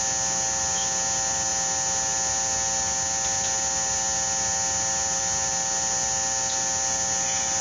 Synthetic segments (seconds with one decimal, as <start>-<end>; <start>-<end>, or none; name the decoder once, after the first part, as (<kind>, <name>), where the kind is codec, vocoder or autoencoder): none